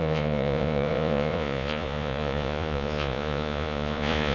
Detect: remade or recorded remade